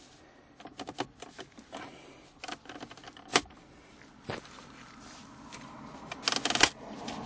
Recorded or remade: recorded